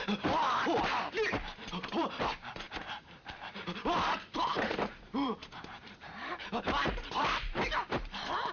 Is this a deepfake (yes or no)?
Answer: yes